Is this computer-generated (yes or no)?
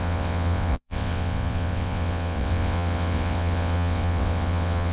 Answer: yes